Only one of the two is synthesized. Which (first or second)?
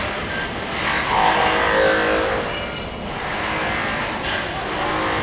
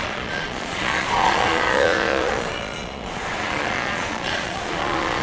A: second